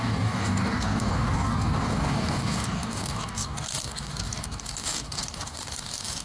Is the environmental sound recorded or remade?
remade